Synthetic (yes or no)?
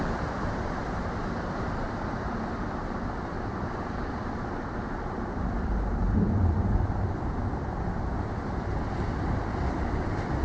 yes